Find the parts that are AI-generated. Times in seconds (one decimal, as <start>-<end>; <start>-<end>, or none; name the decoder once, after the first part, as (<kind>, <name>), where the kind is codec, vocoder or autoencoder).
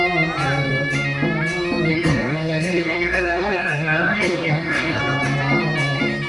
1.9-5.0 (codec, SNAC)